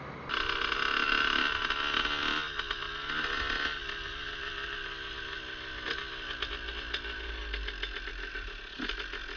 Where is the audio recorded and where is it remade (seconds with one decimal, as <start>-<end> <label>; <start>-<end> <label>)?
0.0-9.4 recorded